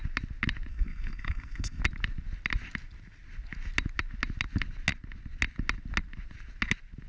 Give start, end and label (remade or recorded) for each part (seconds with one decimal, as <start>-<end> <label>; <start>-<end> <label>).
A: 0.0-0.7 recorded; 0.7-1.8 remade; 1.8-7.1 recorded